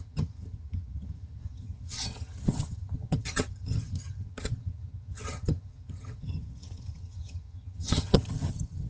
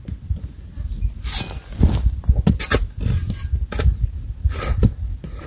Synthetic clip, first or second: first